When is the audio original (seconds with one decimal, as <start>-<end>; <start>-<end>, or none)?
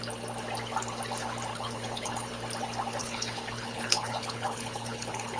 0.0-1.5; 2.3-3.0